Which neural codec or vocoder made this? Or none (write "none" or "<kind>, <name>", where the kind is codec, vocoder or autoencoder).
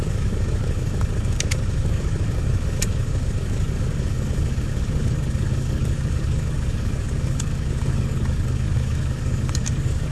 codec, DAC